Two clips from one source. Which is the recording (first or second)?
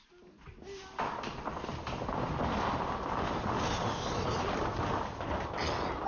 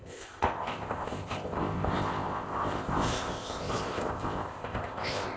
first